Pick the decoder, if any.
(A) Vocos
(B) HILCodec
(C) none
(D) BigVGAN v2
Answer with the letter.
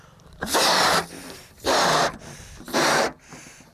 D